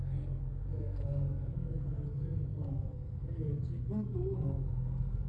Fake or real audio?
fake